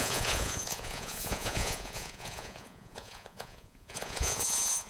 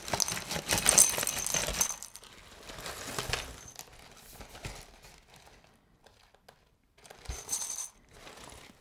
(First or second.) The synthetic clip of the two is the first